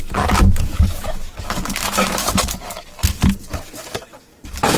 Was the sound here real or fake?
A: fake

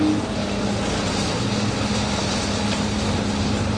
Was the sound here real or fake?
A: real